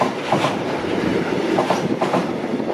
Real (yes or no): no